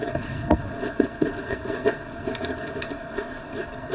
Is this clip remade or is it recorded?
remade